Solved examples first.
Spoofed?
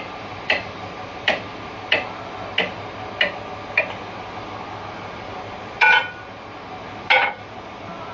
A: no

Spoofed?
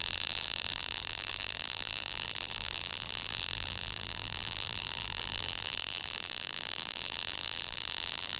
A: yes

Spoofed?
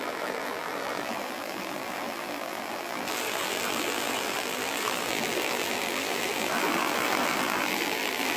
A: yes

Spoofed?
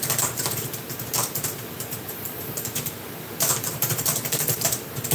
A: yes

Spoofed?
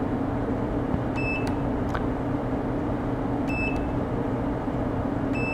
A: yes